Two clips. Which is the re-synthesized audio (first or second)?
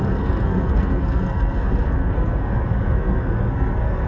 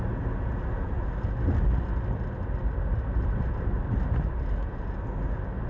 first